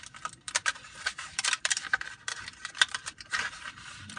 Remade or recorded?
remade